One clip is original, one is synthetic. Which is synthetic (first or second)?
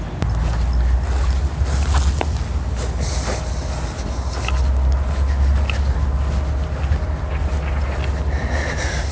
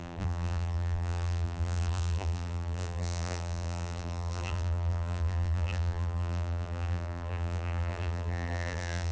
second